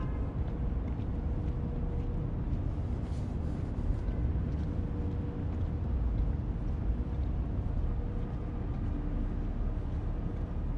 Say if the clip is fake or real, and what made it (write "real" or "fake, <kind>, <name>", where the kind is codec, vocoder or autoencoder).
real